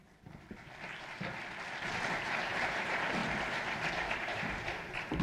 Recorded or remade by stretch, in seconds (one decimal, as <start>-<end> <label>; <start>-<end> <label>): 0.0-1.9 recorded; 1.9-3.2 remade; 3.2-4.1 recorded; 4.1-5.2 remade